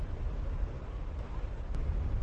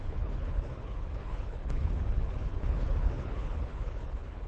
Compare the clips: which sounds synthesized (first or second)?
second